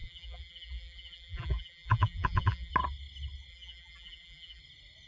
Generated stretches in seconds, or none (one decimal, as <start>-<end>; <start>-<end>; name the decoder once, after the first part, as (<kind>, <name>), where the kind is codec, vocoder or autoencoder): 0.0-2.7 (vocoder, BigVGAN v2); 3.5-4.6